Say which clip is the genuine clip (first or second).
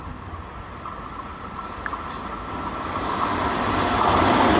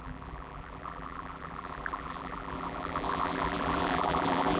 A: first